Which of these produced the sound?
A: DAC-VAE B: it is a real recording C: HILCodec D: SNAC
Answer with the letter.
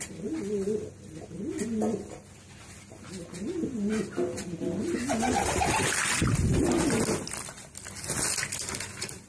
B